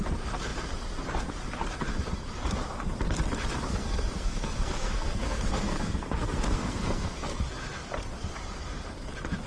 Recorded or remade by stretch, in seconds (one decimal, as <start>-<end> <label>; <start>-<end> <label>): 0.0-3.7 recorded; 3.7-7.4 remade; 7.4-9.5 recorded